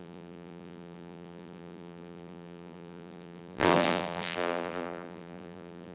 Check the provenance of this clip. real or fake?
fake